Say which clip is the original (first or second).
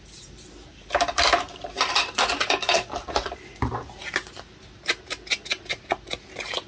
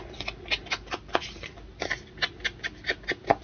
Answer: second